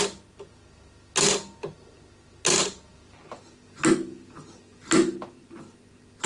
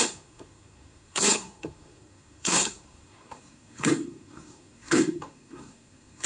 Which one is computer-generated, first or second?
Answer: second